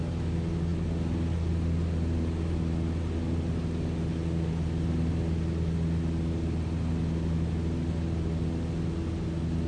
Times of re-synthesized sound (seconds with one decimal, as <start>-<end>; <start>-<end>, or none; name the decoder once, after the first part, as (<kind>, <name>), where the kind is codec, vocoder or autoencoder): none